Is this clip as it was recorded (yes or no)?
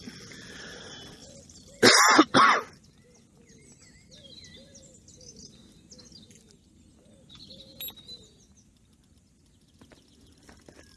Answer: yes